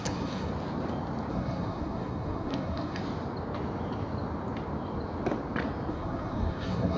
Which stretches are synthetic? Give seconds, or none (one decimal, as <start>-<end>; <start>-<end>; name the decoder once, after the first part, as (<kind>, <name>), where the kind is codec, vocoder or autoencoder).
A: 0.0-0.5 (codec, SNAC); 1.3-3.0; 5.9-7.0